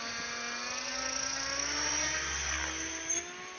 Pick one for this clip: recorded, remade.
recorded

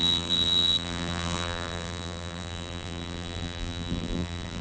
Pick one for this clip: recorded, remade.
remade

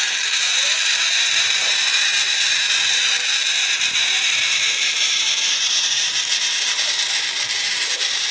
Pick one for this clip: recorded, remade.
remade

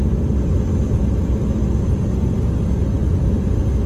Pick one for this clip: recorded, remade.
recorded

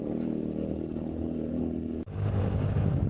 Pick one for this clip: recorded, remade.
recorded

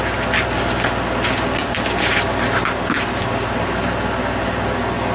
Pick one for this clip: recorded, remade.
recorded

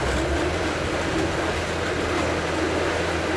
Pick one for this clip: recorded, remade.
recorded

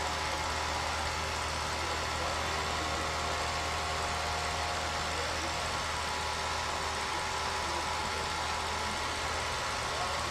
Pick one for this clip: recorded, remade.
recorded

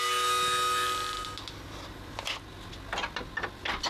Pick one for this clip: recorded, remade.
recorded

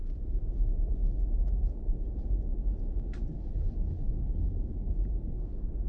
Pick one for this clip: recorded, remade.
remade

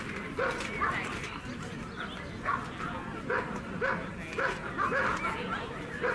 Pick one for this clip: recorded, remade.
recorded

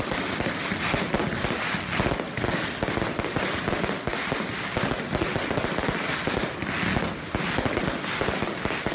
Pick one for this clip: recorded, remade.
recorded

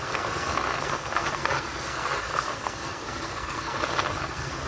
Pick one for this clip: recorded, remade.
remade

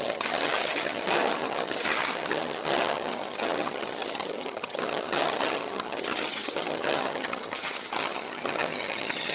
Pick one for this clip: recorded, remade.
remade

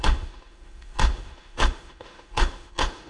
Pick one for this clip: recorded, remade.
remade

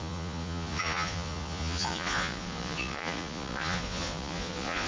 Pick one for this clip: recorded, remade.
remade